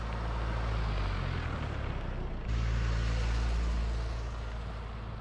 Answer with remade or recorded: recorded